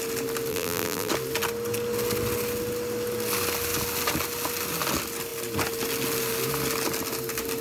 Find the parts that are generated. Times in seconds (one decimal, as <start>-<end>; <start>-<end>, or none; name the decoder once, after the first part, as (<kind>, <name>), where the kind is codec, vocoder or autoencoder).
0.5-1.1 (vocoder, BigVGAN v2)